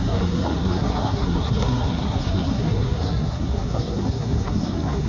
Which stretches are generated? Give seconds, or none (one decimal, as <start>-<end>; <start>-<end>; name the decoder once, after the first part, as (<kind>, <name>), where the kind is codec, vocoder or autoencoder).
0.0-5.1 (codec, SNAC)